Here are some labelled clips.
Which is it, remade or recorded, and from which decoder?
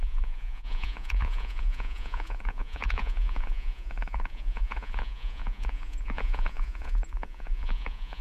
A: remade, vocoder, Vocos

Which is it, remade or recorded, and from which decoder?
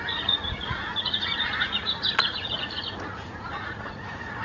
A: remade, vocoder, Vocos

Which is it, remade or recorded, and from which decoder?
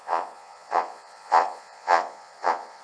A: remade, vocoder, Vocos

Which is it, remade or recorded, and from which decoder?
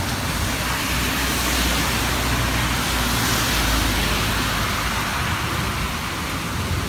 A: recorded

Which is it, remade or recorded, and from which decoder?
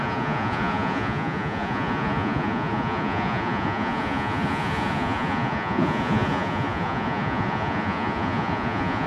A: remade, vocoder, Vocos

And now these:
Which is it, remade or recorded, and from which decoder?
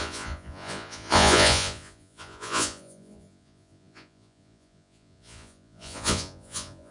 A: remade, vocoder, Vocos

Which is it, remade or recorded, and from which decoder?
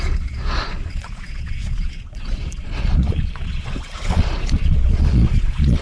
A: remade, vocoder, Vocos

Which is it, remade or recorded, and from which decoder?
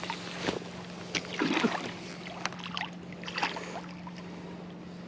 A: recorded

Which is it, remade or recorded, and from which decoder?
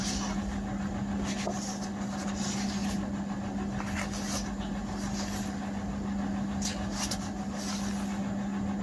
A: recorded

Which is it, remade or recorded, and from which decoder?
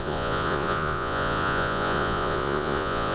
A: remade, vocoder, Vocos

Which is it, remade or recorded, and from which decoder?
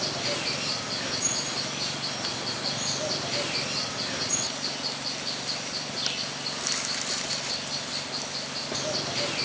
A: recorded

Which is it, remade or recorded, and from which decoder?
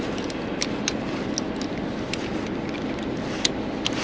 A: recorded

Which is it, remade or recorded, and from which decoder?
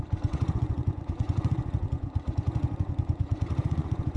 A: remade, vocoder, Vocos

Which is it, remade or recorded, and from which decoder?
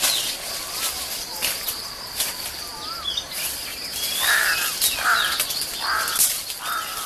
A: recorded